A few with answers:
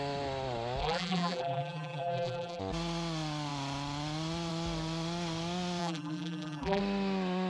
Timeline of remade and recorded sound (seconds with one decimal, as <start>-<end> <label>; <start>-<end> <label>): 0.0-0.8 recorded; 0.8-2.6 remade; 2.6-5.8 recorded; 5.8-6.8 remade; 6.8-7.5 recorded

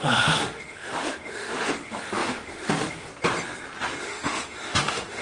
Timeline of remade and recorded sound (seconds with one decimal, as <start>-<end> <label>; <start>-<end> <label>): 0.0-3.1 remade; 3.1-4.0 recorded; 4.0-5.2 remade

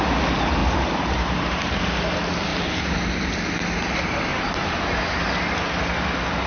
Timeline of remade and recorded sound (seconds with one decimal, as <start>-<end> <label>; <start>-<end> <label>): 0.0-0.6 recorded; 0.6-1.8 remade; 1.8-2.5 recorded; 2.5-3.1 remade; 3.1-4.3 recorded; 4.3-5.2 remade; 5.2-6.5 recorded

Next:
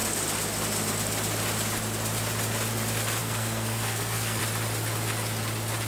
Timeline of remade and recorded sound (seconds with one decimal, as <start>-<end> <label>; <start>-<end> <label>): 0.0-3.2 recorded; 3.2-4.4 remade; 4.4-5.9 recorded

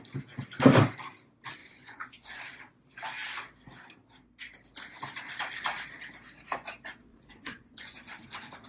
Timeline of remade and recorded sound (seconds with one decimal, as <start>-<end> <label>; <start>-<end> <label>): 0.0-1.6 recorded; 1.6-2.4 remade; 2.4-7.1 recorded; 7.1-8.0 remade; 8.0-8.7 recorded